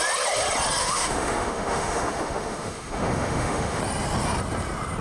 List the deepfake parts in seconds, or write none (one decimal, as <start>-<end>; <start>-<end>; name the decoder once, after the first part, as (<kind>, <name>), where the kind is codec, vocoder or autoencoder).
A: 0.8-3.8 (autoencoder, DAC-VAE)